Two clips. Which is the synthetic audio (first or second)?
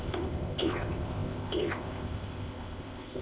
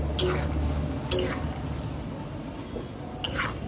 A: first